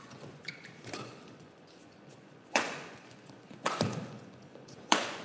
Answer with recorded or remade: remade